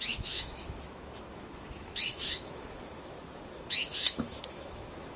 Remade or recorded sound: remade